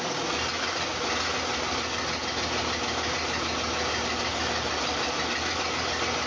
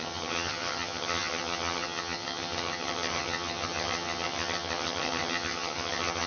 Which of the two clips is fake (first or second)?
second